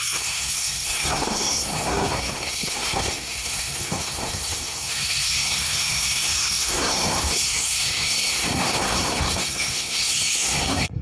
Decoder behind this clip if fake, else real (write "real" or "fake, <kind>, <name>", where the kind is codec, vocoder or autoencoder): fake, codec, SNAC